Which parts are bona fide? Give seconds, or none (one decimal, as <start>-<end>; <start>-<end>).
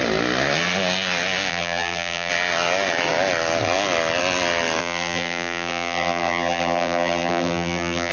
0.0-1.5; 2.3-4.8